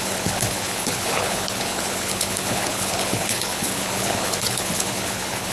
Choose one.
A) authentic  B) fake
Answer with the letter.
B